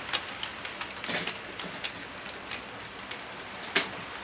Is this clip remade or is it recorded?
recorded